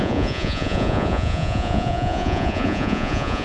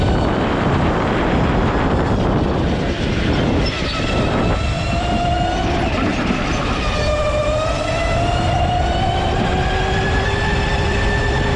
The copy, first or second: first